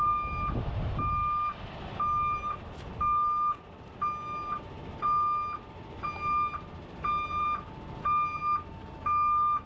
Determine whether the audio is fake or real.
real